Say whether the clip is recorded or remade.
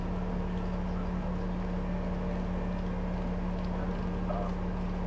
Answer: recorded